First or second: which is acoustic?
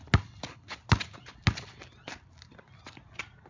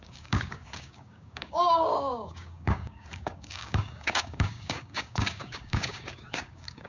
first